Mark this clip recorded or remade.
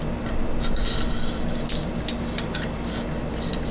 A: recorded